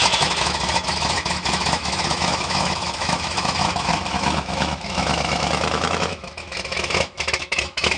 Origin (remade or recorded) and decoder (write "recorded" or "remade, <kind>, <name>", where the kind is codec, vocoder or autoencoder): remade, autoencoder, DAC-VAE